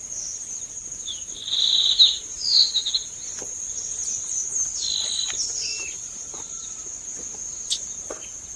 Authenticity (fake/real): real